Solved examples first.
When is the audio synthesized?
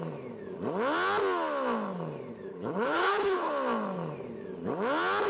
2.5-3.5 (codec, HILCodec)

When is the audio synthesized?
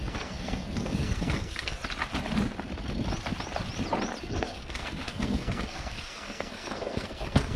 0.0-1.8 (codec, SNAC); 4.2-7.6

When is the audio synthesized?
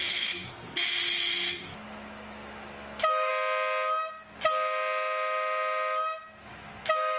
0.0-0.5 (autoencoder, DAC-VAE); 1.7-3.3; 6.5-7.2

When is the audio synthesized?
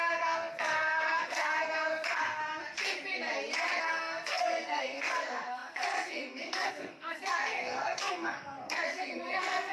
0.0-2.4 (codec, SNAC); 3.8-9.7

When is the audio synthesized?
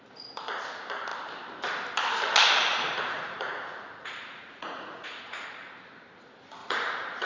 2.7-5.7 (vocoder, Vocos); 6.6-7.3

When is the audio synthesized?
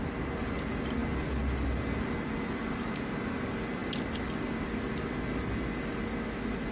none